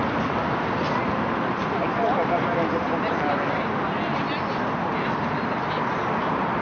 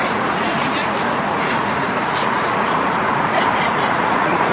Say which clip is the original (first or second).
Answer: first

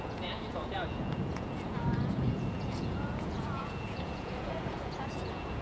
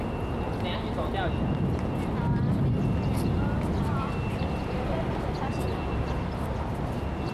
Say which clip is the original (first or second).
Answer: second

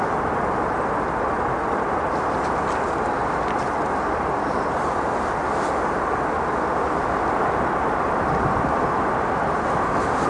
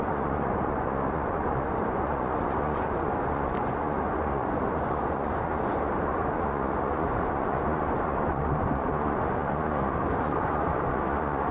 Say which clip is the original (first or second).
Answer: first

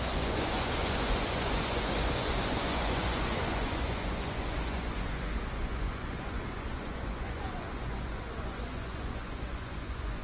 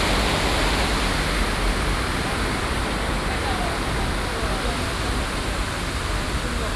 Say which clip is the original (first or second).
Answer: second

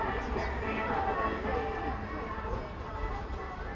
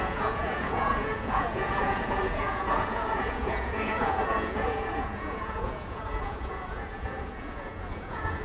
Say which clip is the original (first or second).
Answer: first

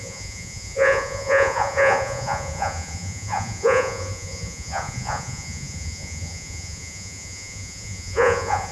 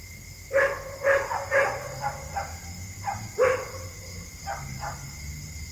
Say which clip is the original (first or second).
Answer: second